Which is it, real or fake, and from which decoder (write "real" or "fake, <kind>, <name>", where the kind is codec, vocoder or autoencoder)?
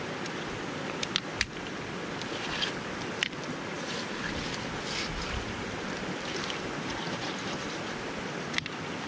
real